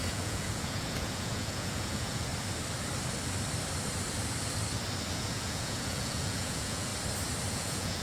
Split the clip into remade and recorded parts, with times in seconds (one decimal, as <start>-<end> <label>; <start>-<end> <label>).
0.0-2.3 remade; 2.3-5.1 recorded; 5.1-6.9 remade; 6.9-7.5 recorded; 7.5-8.0 remade

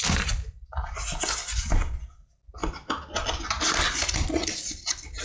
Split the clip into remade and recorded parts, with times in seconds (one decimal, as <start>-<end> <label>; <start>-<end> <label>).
0.0-5.2 recorded

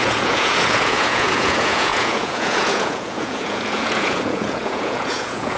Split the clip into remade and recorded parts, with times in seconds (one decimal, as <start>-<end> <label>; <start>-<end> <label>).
0.0-5.6 remade